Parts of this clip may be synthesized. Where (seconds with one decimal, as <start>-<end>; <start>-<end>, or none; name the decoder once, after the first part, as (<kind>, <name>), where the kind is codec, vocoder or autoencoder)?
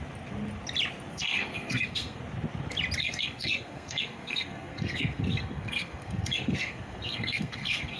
1.1-2.2 (codec, SNAC); 3.0-8.0